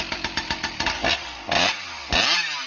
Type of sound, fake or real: real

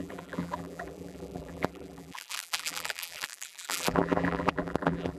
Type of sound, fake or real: fake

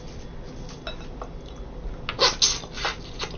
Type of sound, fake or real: real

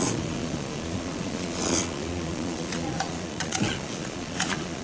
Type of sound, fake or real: fake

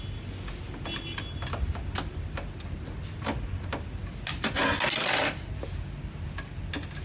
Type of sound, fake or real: real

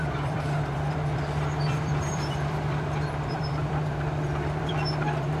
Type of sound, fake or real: fake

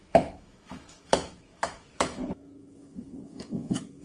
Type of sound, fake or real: fake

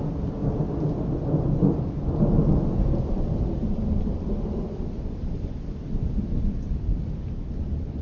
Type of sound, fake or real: real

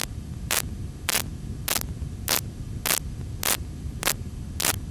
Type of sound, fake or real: real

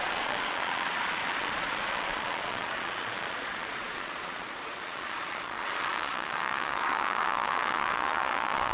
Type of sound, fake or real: fake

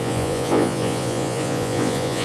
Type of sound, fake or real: fake